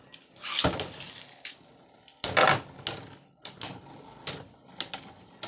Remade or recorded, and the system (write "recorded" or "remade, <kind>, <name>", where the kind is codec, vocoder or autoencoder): recorded